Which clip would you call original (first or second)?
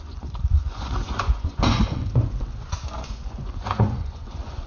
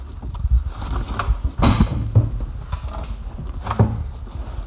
second